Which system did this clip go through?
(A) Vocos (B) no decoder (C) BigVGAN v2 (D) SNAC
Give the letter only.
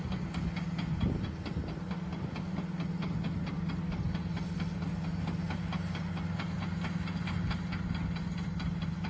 B